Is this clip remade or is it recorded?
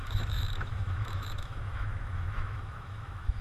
remade